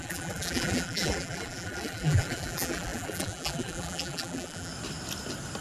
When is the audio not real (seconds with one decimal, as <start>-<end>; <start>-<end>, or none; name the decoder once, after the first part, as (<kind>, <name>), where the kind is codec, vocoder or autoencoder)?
0.0-4.7 (vocoder, BigVGAN v2)